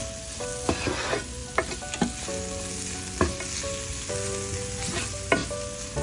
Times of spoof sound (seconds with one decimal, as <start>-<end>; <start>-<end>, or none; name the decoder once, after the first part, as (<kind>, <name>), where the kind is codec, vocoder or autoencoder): none